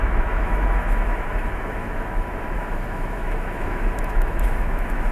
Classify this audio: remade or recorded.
remade